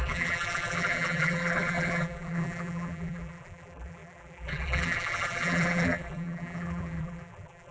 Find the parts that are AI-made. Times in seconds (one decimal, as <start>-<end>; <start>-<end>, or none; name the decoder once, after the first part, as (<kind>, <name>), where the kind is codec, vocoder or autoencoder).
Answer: 0.0-7.7 (vocoder, BigVGAN v2)

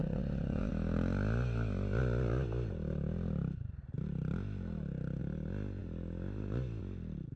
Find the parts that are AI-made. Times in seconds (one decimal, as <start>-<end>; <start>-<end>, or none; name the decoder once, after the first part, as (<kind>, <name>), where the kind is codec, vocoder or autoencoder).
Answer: 0.0-0.7 (vocoder, Vocos)

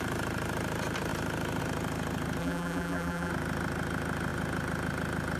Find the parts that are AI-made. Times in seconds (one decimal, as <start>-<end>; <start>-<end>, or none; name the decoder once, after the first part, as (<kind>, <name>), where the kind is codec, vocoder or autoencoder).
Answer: 2.4-3.3 (vocoder, BigVGAN v2)

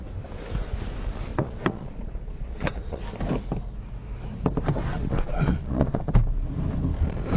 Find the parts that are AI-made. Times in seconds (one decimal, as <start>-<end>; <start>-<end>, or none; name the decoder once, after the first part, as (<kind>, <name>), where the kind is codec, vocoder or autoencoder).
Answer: 1.3-3.0 (vocoder, Vocos); 4.9-6.1